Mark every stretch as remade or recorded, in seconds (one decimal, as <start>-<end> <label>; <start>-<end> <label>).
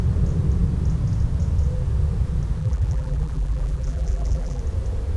0.0-2.6 recorded; 2.6-4.6 remade; 4.6-5.2 recorded